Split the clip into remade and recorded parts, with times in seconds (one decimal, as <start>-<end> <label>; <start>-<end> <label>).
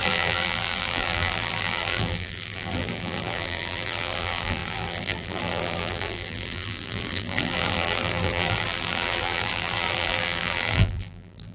0.0-11.5 remade